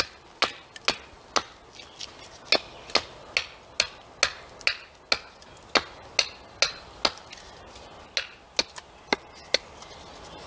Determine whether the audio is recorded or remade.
recorded